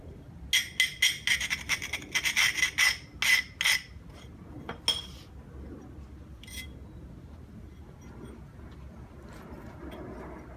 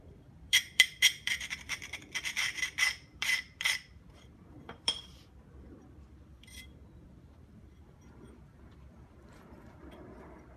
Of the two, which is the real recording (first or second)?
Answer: first